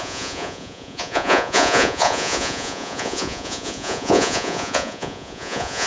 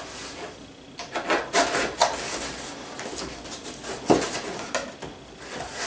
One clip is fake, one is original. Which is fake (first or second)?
first